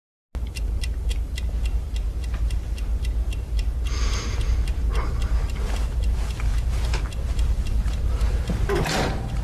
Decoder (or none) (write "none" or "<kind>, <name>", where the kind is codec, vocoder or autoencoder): none